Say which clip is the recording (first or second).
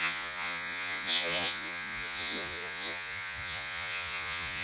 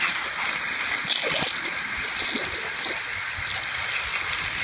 second